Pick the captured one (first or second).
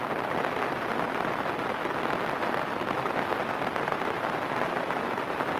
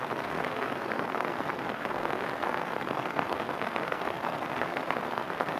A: first